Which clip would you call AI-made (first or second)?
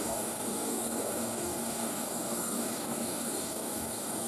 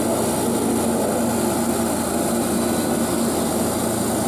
first